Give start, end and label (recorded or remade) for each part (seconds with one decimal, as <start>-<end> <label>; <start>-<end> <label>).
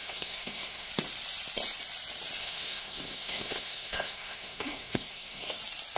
0.0-0.9 remade; 0.9-2.4 recorded; 2.4-5.6 remade; 5.6-6.0 recorded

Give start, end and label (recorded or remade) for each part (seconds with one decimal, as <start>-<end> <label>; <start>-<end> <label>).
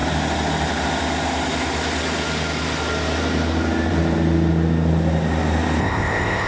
0.0-5.8 recorded; 5.8-6.5 remade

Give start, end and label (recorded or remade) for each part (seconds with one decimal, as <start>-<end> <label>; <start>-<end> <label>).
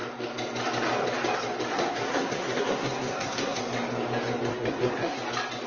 0.0-1.7 recorded; 1.7-3.6 remade; 3.6-4.5 recorded; 4.5-5.2 remade; 5.2-5.7 recorded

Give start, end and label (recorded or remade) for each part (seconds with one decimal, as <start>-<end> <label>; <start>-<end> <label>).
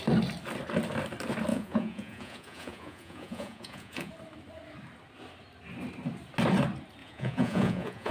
0.0-1.5 recorded; 1.5-4.1 remade; 4.1-7.0 recorded; 7.0-8.1 remade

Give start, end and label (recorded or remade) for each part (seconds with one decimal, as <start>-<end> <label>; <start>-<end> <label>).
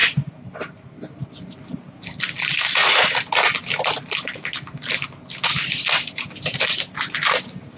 0.0-2.8 recorded; 2.8-3.3 remade; 3.3-7.8 recorded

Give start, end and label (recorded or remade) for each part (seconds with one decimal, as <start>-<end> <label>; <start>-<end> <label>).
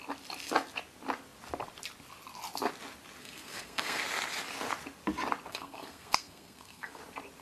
0.0-3.2 recorded; 3.2-4.0 remade; 4.0-5.5 recorded; 5.5-7.0 remade; 7.0-7.4 recorded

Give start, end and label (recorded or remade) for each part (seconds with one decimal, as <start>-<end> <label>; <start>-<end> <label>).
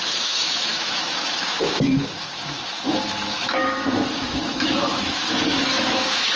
0.0-6.4 remade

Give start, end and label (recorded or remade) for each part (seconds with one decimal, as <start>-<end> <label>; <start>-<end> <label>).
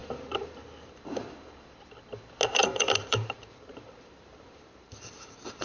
0.0-0.9 remade; 0.9-2.6 recorded; 2.6-5.6 remade